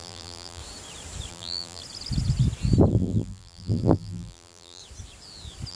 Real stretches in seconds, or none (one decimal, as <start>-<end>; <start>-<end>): 0.6-1.3; 1.8-2.9; 4.8-5.7